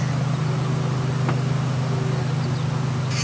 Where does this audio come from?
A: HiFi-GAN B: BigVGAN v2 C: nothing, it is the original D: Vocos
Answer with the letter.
C